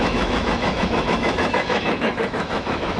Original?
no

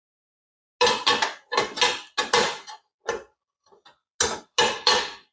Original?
yes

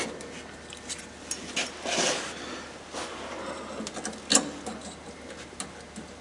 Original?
yes